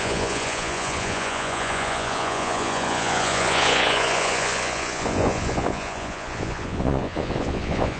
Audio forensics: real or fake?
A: fake